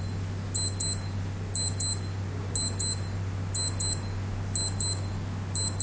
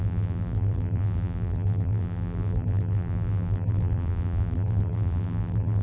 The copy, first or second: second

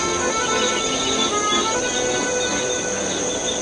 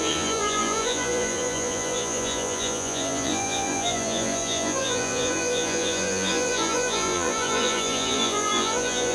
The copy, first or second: second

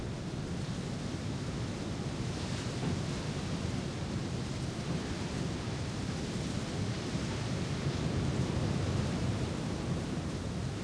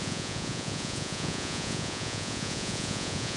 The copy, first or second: second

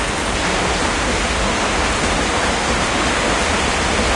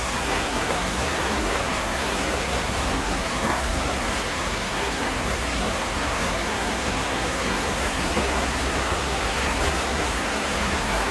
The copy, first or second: second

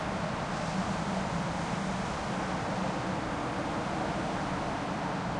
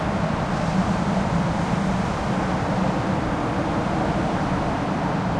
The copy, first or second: second